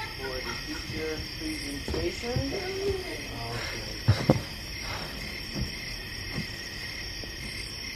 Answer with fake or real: real